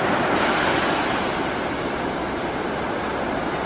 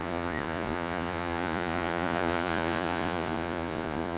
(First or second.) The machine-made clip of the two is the second